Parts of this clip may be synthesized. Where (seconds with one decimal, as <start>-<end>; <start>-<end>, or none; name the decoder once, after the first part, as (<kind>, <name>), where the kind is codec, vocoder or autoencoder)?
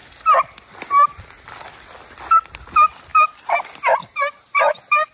4.0-5.1 (vocoder, BigVGAN v2)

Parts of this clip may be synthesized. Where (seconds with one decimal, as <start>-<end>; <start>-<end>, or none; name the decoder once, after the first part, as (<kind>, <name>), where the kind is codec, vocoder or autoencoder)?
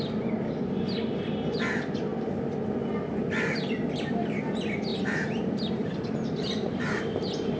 4.9-7.0 (vocoder, BigVGAN v2)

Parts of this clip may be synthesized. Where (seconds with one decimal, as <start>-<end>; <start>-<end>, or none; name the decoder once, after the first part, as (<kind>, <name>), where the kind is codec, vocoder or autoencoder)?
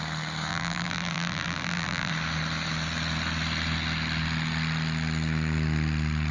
0.5-2.1 (vocoder, BigVGAN v2)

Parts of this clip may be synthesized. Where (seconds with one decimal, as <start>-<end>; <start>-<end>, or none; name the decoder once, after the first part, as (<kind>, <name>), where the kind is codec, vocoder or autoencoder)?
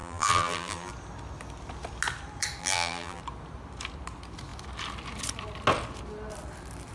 0.0-0.9 (vocoder, BigVGAN v2); 2.6-3.2